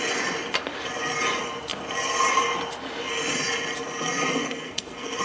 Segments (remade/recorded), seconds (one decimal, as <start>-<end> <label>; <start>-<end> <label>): 0.0-4.4 recorded; 4.4-5.2 remade